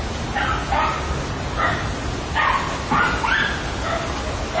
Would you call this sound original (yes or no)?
yes